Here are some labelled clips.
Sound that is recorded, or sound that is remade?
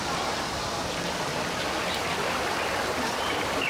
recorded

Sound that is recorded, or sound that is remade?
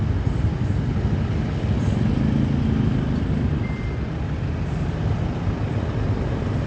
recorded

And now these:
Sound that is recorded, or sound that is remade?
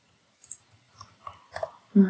recorded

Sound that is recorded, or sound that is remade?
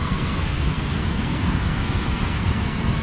remade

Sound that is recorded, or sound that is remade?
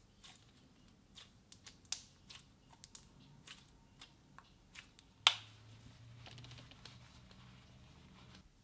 recorded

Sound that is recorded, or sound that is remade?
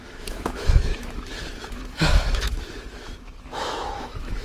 remade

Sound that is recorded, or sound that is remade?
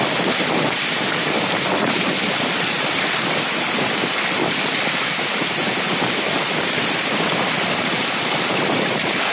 remade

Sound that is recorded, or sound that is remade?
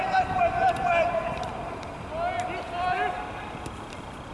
recorded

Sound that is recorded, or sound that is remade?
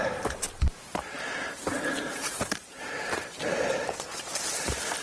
remade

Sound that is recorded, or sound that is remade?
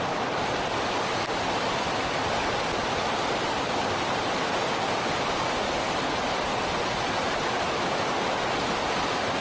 recorded